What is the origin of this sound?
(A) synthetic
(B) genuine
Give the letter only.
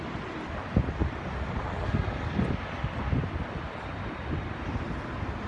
B